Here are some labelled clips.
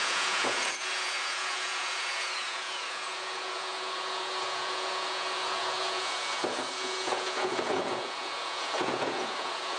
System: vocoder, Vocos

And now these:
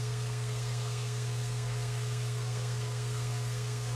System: codec, SNAC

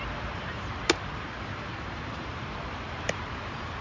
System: vocoder, BigVGAN v2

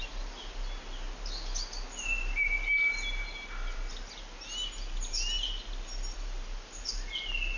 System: none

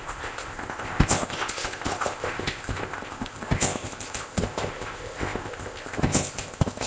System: codec, ZipCodec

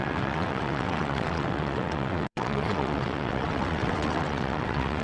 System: vocoder, WaveNeXt